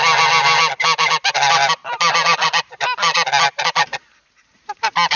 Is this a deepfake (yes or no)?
no